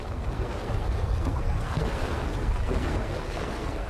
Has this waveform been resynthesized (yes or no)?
yes